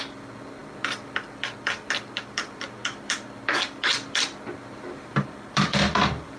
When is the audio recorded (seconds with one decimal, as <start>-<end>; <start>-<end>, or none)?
0.0-6.4